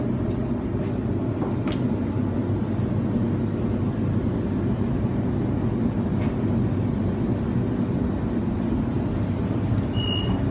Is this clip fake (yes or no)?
no